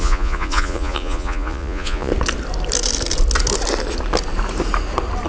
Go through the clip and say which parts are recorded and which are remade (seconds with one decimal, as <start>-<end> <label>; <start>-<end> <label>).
0.0-2.1 remade; 2.1-5.3 recorded